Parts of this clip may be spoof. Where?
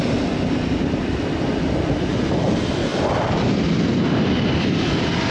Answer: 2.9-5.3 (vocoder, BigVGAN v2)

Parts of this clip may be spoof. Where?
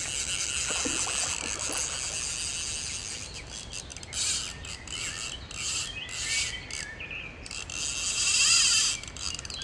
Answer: none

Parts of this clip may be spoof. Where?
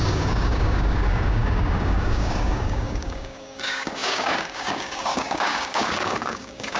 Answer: 0.0-6.8 (codec, DAC)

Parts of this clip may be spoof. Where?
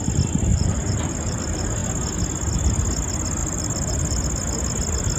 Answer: 0.5-1.4 (vocoder, BigVGAN v2); 3.4-4.2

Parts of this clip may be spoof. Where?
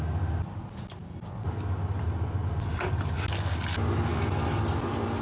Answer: 4.1-4.6 (autoencoder, DAC-VAE)